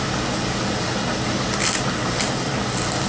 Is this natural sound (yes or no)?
yes